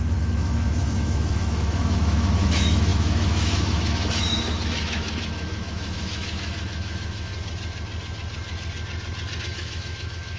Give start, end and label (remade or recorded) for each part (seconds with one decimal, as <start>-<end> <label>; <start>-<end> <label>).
0.0-7.3 remade; 7.3-9.4 recorded; 9.4-10.4 remade